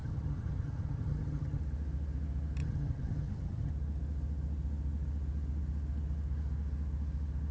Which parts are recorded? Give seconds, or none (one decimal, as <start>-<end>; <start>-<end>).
1.6-2.6; 3.7-7.5